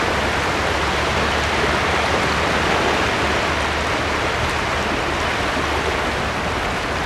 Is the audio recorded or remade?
recorded